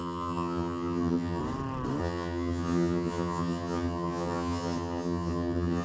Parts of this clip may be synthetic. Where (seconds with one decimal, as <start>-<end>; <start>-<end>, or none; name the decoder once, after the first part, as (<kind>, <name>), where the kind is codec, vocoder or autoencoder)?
0.0-1.4 (vocoder, HiFi-GAN); 2.0-5.8